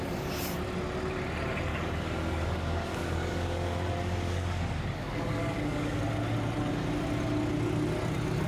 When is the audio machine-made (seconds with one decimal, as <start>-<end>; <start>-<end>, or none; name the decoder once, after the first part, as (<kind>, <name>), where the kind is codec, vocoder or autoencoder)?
1.7-6.0 (codec, DAC)